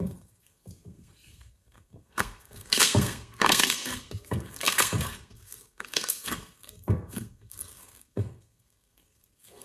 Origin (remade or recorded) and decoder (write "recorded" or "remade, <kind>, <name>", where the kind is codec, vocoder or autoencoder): remade, codec, SNAC